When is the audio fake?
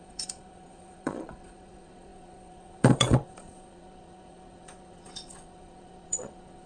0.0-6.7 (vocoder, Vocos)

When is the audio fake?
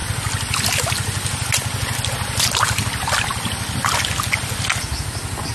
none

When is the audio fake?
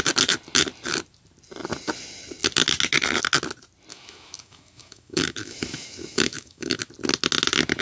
3.9-6.8 (autoencoder, DAC-VAE)